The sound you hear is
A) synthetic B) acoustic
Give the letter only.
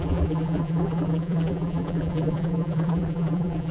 A